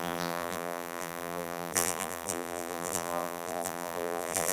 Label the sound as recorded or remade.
remade